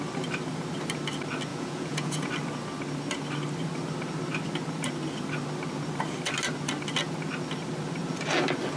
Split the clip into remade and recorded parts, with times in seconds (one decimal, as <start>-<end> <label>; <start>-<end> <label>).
0.0-1.5 recorded; 1.5-2.3 remade; 2.3-8.8 recorded